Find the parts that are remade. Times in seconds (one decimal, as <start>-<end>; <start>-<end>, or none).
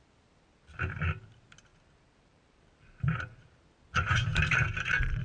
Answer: 1.7-3.6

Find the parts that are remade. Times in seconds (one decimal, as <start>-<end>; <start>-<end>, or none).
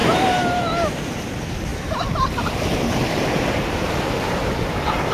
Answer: 0.0-0.6; 1.7-5.1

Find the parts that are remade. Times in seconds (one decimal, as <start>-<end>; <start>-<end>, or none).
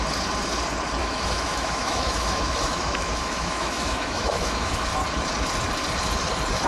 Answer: 1.0-4.8